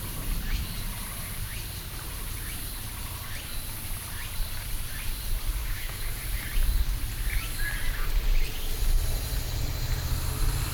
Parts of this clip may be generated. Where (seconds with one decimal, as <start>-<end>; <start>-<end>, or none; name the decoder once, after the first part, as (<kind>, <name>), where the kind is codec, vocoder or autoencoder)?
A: 5.6-6.2 (codec, DAC)